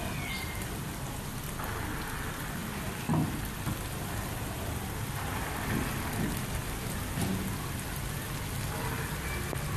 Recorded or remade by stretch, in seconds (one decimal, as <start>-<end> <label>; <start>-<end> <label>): 0.0-9.8 recorded

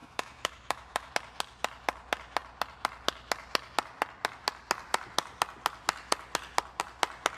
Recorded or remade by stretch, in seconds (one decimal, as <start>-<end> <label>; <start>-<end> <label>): 0.0-1.1 remade; 1.1-7.4 recorded